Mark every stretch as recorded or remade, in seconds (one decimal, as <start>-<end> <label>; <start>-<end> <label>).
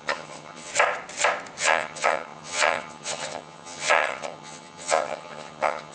0.0-0.7 remade; 0.7-1.6 recorded; 1.6-5.9 remade